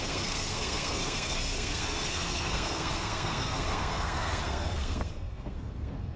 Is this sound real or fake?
fake